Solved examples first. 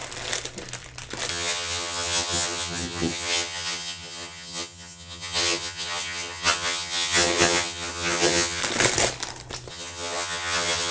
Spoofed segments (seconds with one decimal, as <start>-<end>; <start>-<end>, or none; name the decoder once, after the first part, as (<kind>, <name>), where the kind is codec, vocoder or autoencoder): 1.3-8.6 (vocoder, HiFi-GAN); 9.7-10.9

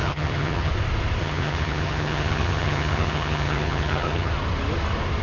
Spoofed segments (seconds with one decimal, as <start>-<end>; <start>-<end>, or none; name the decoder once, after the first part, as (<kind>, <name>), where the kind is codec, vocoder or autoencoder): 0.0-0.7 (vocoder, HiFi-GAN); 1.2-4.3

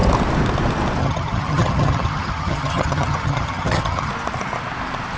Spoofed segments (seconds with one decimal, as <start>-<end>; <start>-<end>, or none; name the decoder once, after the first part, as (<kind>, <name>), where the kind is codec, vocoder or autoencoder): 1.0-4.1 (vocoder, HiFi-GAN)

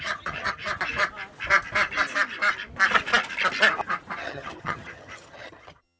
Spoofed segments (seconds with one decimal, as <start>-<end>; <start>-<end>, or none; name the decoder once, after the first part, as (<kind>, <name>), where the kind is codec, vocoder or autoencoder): 0.0-0.6 (vocoder, HiFi-GAN); 4.2-6.0